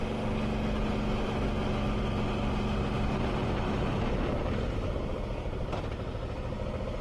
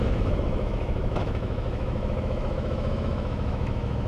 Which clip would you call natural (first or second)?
first